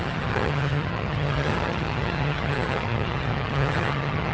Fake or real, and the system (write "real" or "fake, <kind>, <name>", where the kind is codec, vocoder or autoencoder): fake, vocoder, HiFi-GAN